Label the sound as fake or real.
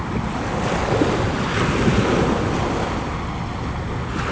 real